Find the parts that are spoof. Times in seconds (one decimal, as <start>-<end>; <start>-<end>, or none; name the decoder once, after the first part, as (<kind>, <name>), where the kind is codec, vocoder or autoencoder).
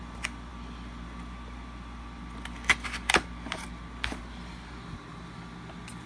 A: none